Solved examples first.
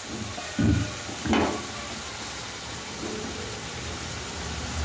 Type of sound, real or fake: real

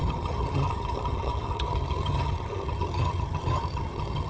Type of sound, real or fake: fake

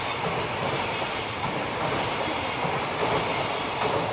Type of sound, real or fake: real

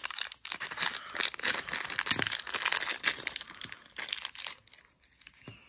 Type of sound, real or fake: real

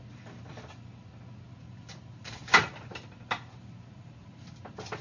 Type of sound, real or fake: real